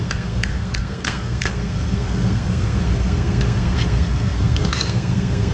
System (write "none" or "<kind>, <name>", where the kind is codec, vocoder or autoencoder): codec, SNAC